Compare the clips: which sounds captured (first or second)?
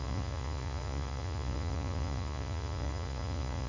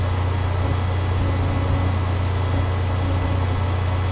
second